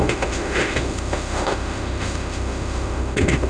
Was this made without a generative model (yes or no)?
no